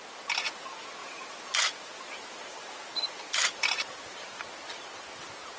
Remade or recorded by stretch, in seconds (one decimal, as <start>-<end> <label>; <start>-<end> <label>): 0.0-1.0 recorded; 1.0-4.4 remade; 4.4-5.6 recorded